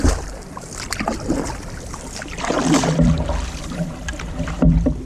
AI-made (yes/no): yes